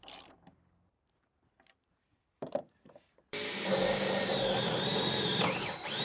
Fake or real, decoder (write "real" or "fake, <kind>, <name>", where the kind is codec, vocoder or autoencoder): fake, vocoder, BigVGAN v2